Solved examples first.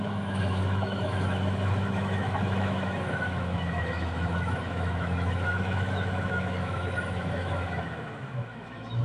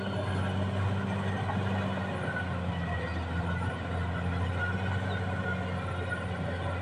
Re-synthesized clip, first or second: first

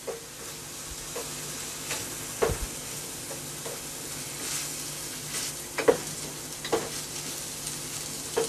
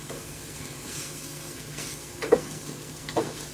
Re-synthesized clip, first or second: second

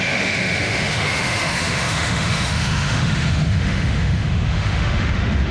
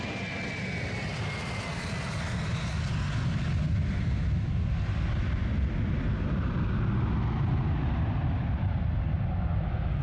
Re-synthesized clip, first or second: first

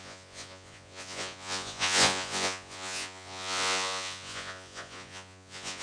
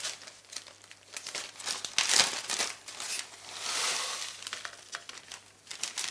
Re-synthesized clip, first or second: first